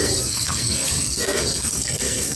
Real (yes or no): no